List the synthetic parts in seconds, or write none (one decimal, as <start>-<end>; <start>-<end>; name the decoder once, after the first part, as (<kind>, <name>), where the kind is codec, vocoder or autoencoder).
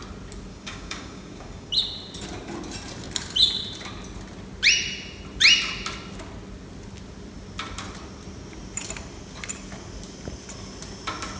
0.5-1.7 (codec, DAC)